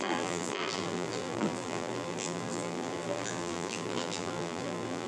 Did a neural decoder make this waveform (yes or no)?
yes